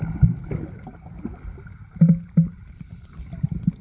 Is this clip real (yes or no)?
yes